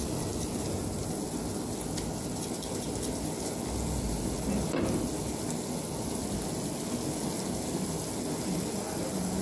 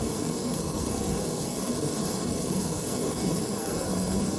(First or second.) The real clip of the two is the first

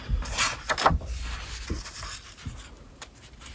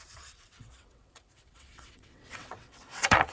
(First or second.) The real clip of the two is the first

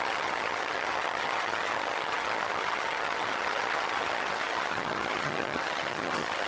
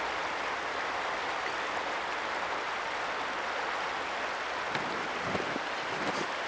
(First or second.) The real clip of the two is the second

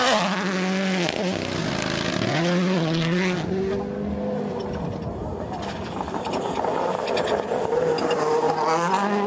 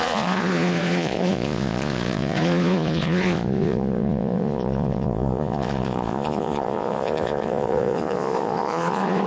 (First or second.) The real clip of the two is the first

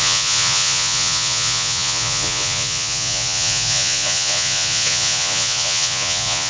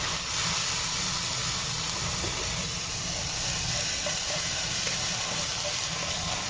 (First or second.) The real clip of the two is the second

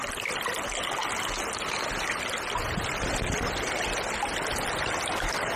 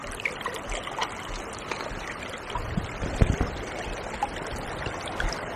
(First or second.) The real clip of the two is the first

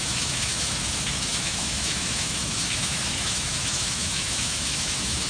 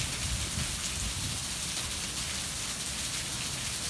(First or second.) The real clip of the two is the second